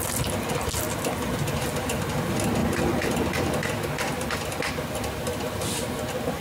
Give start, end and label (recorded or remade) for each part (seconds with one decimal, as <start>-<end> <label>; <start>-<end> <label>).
0.0-6.4 recorded